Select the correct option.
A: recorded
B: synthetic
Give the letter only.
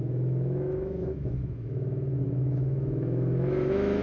B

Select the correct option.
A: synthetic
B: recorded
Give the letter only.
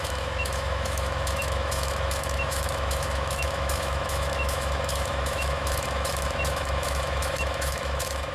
A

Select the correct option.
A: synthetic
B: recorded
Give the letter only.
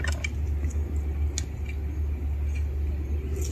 B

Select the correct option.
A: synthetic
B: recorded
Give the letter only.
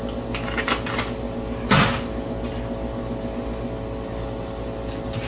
B